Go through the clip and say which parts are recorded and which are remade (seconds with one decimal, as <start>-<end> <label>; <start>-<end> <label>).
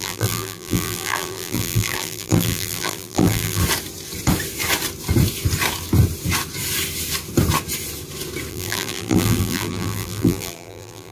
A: 0.0-3.6 remade; 3.6-8.5 recorded; 8.5-11.1 remade